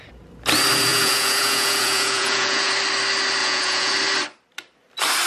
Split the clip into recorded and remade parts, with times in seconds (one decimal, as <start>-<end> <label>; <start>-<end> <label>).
0.0-0.9 recorded; 0.9-2.7 remade; 2.7-3.4 recorded; 3.4-3.9 remade; 3.9-5.3 recorded